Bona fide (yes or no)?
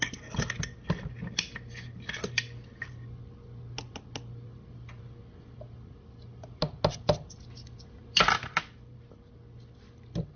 yes